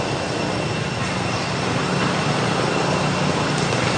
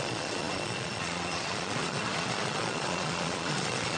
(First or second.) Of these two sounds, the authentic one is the first